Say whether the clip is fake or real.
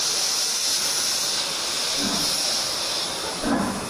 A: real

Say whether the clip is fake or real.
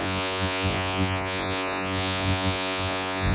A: fake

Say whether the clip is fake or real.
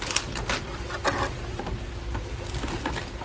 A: real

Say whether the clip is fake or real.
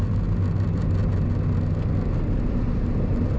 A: real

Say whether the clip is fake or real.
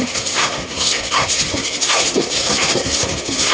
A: fake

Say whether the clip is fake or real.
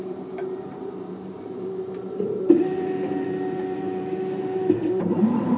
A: fake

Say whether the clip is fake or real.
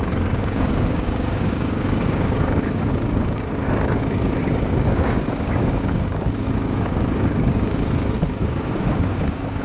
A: fake